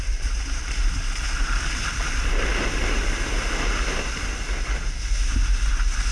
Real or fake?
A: real